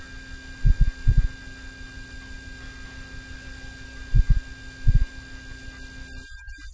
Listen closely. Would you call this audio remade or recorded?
recorded